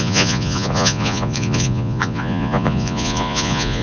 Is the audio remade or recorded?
remade